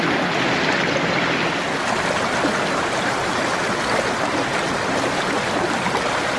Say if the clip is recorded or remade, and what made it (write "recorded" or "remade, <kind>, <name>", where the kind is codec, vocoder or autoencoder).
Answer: recorded